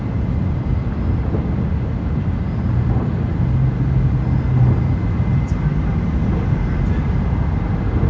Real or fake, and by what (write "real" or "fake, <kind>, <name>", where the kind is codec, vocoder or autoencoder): real